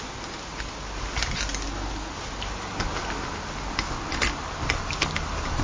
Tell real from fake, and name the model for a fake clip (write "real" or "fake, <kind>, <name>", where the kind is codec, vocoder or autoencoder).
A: real